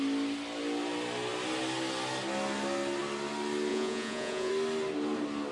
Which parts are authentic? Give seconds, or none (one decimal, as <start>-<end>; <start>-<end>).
0.0-3.7; 4.5-5.5